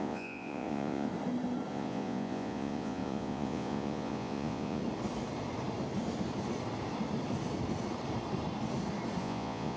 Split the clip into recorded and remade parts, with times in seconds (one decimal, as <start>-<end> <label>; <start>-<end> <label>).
0.0-1.1 remade; 1.1-1.7 recorded; 1.7-4.8 remade; 4.8-9.2 recorded; 9.2-9.8 remade